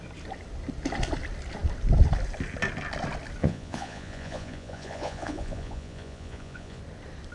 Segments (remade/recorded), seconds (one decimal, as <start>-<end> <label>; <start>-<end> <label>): 0.0-3.4 recorded; 3.4-6.8 remade; 6.8-7.3 recorded